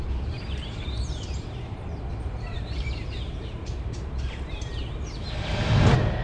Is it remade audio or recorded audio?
remade